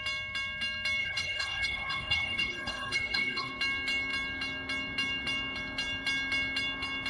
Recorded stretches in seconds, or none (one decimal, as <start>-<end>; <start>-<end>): 0.0-1.0; 3.5-7.1